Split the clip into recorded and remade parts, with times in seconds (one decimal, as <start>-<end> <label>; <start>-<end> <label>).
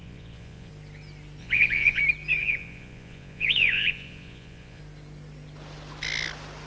0.0-0.7 remade; 0.7-1.4 recorded; 1.4-2.0 remade; 2.0-2.4 recorded; 2.4-4.8 remade; 4.8-6.7 recorded